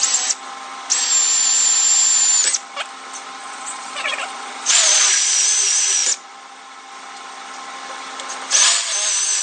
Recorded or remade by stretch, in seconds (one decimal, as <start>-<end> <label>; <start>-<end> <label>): 0.0-3.4 recorded; 3.4-5.4 remade; 5.4-9.4 recorded